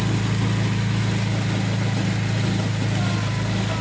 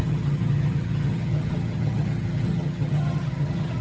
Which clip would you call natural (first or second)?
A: first